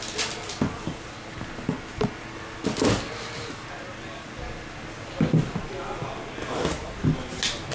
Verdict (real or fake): real